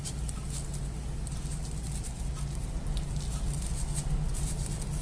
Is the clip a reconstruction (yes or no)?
no